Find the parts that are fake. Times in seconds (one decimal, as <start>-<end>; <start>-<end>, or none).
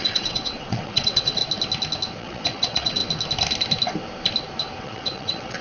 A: 0.0-1.4; 2.2-3.0; 4.8-5.6